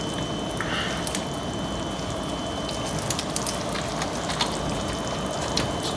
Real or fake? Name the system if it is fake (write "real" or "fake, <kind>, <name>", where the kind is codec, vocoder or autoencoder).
real